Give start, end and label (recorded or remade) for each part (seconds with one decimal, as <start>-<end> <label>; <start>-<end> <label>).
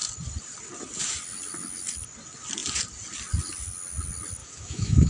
0.0-4.4 recorded; 4.4-5.1 remade